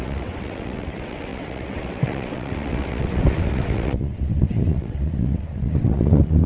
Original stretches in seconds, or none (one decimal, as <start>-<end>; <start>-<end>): none